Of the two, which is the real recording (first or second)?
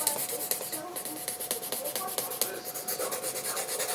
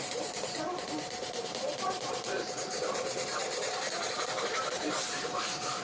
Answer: first